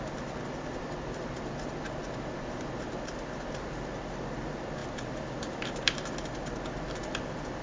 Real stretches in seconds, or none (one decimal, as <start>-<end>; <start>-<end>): 0.0-7.6